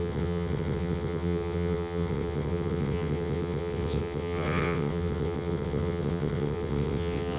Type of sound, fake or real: fake